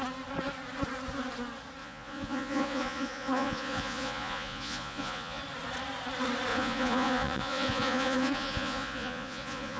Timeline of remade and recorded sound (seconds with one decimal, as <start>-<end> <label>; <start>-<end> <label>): 0.0-1.8 recorded; 1.8-5.4 remade; 5.4-6.5 recorded; 6.5-9.8 remade